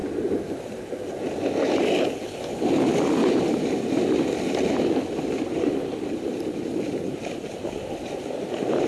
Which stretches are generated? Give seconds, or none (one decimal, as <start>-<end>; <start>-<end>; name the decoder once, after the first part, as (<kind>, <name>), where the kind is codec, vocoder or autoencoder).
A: 3.2-8.3 (vocoder, BigVGAN v2)